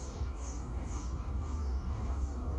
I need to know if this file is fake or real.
fake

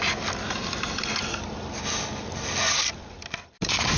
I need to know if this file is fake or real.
real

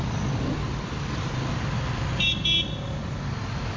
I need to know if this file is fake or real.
real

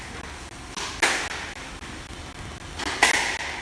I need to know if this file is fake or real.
real